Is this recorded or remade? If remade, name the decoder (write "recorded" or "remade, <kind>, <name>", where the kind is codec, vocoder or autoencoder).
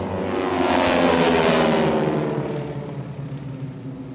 recorded